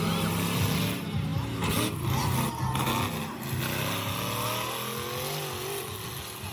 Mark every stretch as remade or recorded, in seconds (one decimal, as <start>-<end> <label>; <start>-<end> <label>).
0.0-6.5 recorded